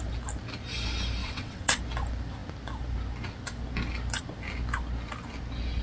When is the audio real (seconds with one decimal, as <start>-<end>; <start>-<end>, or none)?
0.0-1.2; 1.8-5.8